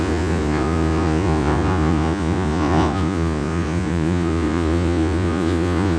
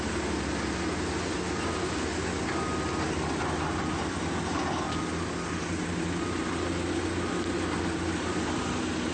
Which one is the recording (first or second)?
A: second